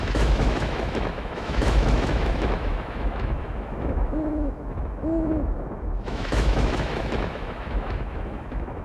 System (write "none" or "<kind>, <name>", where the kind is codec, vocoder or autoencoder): autoencoder, DAC-VAE